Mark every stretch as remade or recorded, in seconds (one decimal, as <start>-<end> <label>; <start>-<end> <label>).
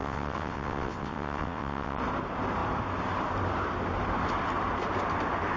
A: 0.0-2.0 remade; 2.0-5.6 recorded